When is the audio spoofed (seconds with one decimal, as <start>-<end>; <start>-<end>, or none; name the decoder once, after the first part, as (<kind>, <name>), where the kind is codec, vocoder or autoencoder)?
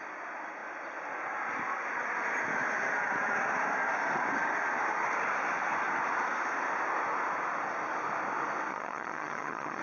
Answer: 8.7-9.8 (vocoder, HiFi-GAN)